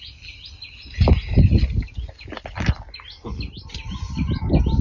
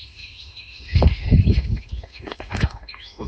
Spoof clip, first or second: second